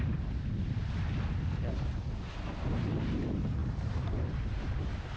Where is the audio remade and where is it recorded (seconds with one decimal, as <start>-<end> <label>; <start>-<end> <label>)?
0.0-3.6 recorded; 3.6-5.2 remade

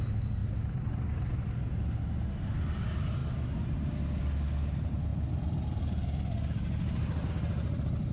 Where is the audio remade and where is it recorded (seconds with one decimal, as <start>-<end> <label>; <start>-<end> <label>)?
0.0-0.4 recorded; 0.4-1.8 remade; 1.8-8.1 recorded

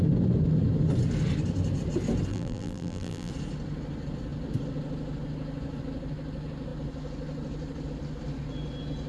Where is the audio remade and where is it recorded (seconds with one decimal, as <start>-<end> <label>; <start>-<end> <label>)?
0.0-2.3 recorded; 2.3-3.3 remade; 3.3-9.1 recorded